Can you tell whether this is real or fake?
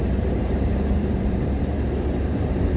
fake